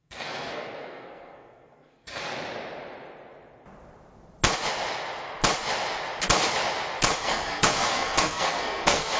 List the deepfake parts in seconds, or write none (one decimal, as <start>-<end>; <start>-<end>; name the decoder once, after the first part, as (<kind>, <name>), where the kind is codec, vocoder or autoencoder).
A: 0.0-2.3 (codec, SNAC); 7.2-9.2